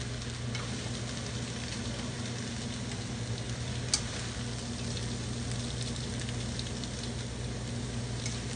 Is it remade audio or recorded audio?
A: recorded